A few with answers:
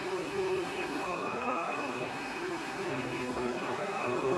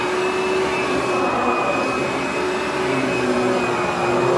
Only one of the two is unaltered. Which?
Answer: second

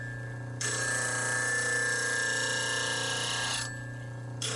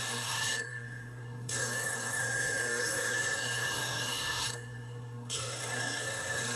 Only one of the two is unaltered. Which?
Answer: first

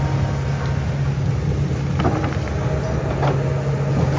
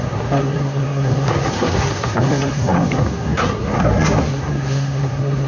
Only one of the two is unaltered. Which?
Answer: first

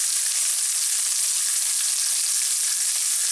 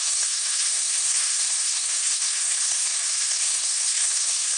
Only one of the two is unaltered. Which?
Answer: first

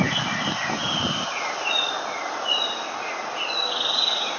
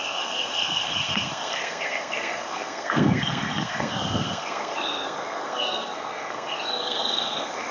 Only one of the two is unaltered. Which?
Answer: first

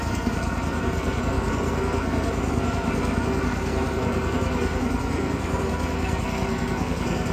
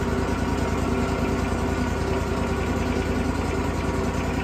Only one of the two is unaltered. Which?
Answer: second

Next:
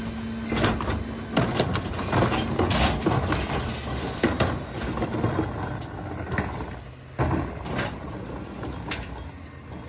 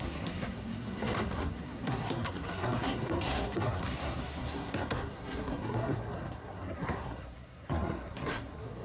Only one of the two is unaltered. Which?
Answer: first